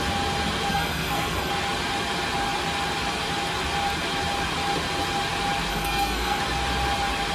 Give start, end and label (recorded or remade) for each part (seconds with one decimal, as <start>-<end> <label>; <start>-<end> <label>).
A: 0.0-0.7 recorded; 0.7-1.5 remade; 1.5-5.7 recorded; 5.7-6.4 remade; 6.4-7.3 recorded